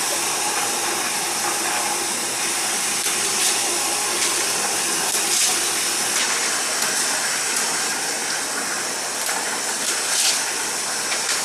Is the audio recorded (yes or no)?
yes